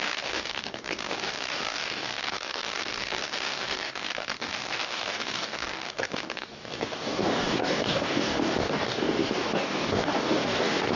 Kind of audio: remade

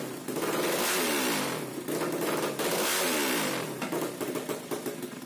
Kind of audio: recorded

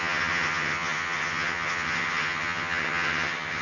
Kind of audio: remade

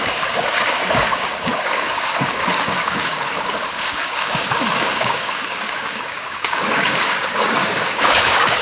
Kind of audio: remade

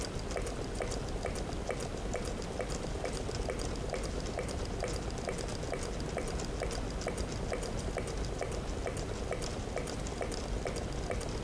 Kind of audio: recorded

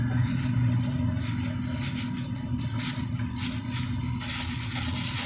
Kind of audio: recorded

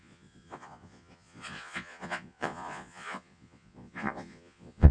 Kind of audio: remade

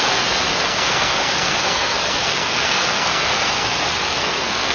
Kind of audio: remade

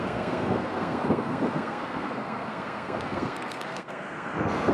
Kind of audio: remade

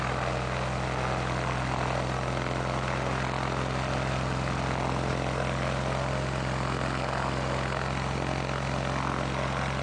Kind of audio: recorded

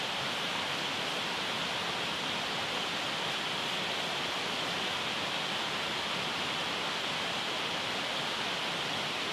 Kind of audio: recorded